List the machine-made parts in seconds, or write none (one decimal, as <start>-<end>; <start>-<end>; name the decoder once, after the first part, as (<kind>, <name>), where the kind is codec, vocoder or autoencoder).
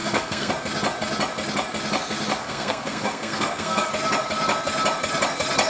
0.0-0.5 (codec, SNAC); 2.4-3.9